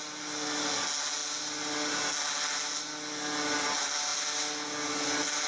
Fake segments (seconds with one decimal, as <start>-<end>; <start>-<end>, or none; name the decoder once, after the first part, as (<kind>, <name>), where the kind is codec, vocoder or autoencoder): none